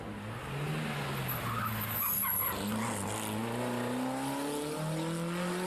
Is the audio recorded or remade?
recorded